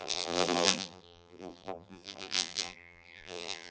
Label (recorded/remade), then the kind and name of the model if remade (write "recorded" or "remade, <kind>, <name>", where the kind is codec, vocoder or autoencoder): remade, vocoder, BigVGAN v2